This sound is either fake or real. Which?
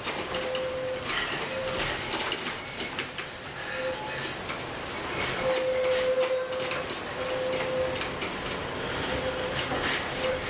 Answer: real